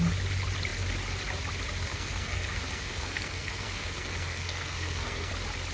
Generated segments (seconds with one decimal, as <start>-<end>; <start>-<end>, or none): 1.9-5.3